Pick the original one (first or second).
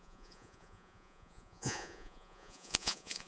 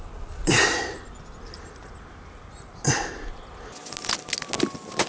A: second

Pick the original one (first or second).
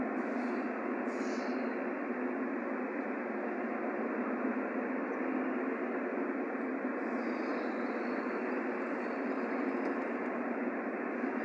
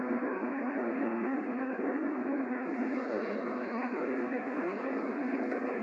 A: first